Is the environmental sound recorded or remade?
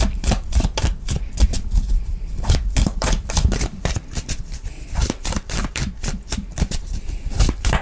remade